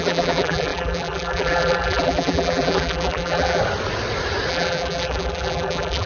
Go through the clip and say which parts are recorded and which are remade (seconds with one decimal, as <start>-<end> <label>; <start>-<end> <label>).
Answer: 0.0-3.6 remade; 3.6-4.5 recorded; 4.5-6.1 remade